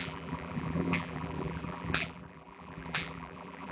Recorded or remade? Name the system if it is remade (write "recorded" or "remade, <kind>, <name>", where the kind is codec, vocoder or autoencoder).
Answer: remade, vocoder, BigVGAN v2